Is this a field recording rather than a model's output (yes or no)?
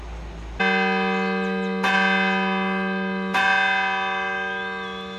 yes